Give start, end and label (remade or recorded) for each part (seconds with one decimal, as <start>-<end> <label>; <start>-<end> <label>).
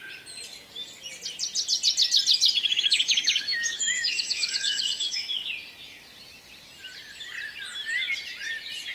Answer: 0.0-2.6 recorded; 2.6-5.5 remade; 5.5-8.9 recorded